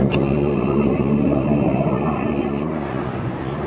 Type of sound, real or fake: fake